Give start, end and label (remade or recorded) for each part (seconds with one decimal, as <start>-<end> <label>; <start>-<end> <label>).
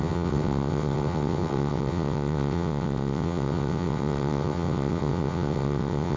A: 0.0-6.2 remade